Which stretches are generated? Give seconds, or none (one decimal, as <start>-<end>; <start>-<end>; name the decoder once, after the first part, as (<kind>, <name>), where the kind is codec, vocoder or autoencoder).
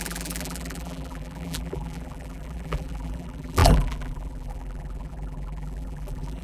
0.0-6.4 (vocoder, BigVGAN v2)